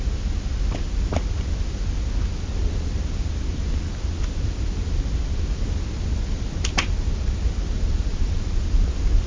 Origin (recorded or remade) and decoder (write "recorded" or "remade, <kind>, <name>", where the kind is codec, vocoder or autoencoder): recorded